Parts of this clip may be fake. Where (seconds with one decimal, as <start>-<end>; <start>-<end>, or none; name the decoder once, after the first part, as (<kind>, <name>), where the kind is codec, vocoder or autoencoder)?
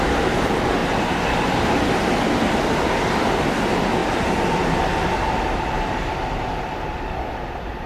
0.8-1.9 (vocoder, BigVGAN v2)